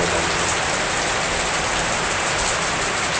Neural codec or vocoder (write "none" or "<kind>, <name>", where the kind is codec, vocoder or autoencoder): none